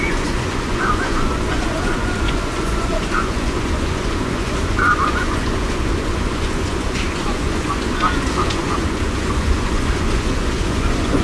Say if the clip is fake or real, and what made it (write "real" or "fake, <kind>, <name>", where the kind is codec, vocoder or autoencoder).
fake, vocoder, Vocos